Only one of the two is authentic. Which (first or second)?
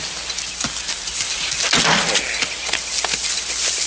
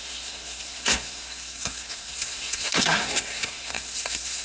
first